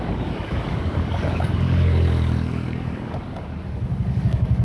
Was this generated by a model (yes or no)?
yes